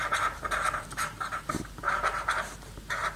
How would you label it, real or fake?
fake